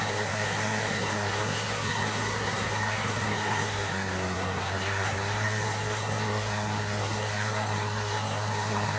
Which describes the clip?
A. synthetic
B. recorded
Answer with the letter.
A